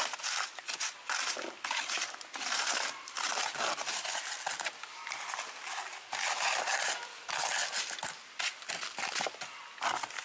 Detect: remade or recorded recorded